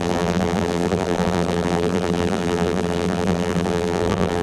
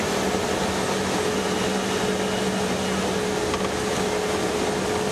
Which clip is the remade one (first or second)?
first